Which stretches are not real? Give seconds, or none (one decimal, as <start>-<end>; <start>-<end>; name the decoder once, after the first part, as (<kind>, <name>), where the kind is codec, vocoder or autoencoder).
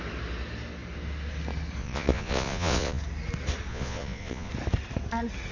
1.8-3.0 (vocoder, Vocos); 3.7-4.5